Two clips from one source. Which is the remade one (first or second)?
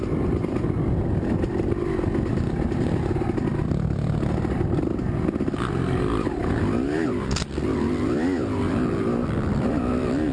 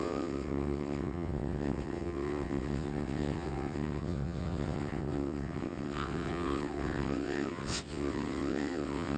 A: second